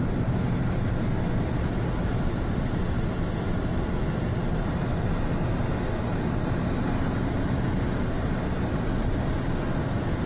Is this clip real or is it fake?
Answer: real